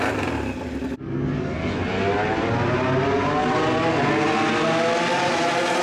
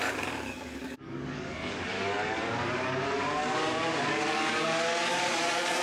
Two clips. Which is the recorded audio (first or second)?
first